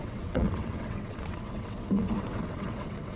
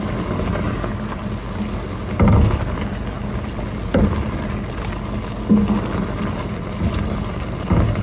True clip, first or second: second